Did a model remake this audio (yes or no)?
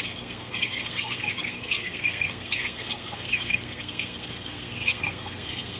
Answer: yes